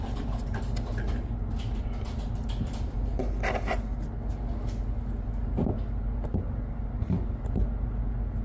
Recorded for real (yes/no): yes